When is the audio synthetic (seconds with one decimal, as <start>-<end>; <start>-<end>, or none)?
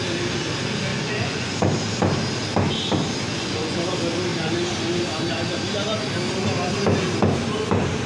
0.9-1.5; 3.3-3.8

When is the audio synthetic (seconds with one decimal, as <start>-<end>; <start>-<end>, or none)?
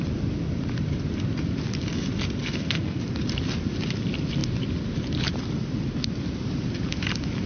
2.4-3.0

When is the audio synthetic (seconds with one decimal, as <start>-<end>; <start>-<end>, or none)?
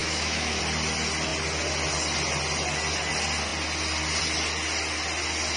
0.0-0.6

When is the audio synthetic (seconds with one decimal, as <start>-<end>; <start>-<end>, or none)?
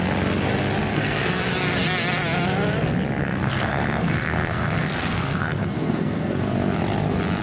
0.9-1.4; 3.2-6.3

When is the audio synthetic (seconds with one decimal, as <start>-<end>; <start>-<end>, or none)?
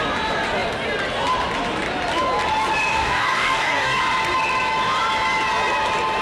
2.9-4.0